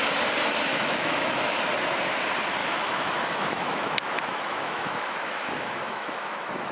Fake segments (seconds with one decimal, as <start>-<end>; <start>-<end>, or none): 0.7-1.6; 2.6-6.7